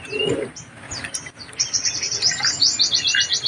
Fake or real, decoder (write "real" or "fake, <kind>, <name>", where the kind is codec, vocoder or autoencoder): real